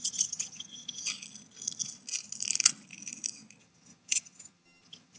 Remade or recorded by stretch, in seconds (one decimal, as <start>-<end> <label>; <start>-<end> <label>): 0.0-1.1 remade; 1.1-3.6 recorded; 3.6-5.2 remade